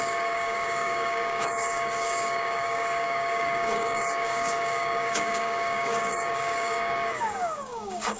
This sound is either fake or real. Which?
fake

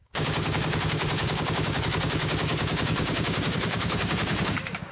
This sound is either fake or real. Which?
fake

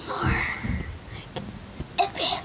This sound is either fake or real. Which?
real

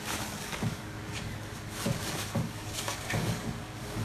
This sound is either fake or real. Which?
fake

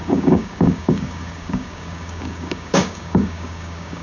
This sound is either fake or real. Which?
fake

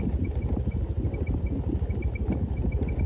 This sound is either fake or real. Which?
real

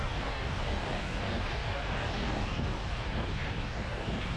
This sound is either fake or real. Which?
fake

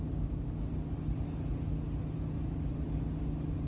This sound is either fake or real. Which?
real